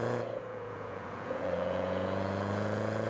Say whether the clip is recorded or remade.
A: remade